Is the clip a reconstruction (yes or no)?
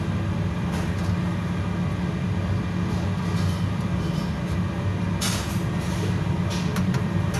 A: no